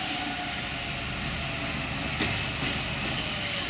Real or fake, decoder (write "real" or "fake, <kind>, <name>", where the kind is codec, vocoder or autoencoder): real